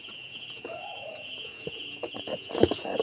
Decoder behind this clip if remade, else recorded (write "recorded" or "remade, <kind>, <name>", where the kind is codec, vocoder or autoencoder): remade, vocoder, Vocos